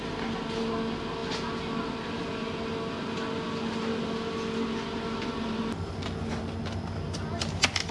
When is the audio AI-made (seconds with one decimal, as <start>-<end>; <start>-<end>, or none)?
none